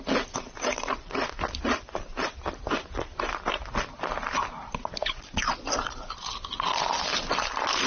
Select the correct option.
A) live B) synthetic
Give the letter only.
A